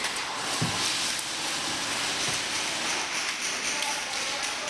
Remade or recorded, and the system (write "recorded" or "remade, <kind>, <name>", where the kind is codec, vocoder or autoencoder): recorded